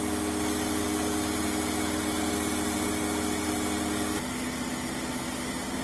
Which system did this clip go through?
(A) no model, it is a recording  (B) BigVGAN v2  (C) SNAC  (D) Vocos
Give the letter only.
A